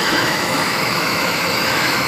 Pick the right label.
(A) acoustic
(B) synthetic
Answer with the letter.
B